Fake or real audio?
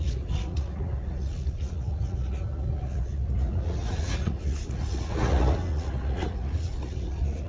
fake